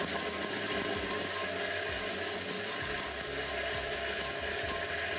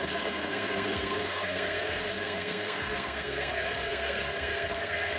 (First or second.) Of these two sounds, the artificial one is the second